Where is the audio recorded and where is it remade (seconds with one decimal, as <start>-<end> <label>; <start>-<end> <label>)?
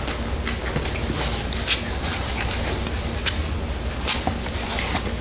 0.0-5.2 recorded